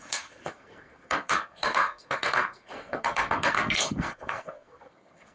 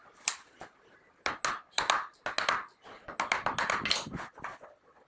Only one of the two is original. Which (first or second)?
second